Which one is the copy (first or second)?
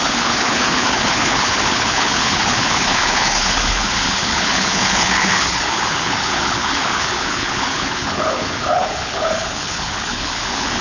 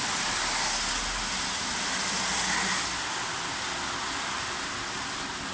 first